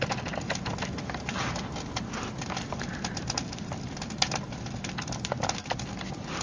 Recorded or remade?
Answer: remade